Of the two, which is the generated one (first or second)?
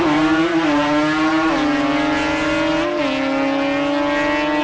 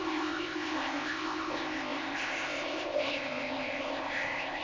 second